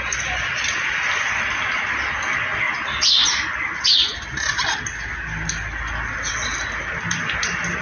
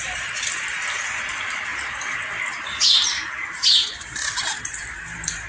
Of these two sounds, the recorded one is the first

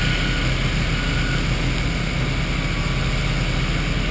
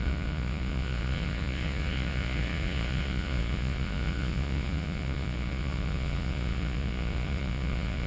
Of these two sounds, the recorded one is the first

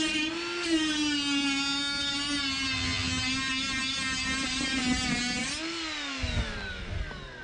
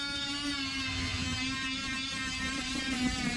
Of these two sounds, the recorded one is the first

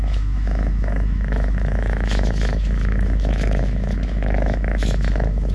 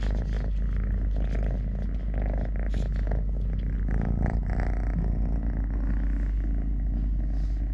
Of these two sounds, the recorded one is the second